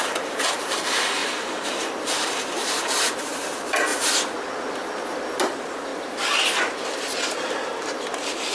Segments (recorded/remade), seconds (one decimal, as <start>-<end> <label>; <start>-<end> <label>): 0.0-3.9 remade; 3.9-5.4 recorded; 5.4-5.9 remade; 5.9-7.3 recorded; 7.3-8.5 remade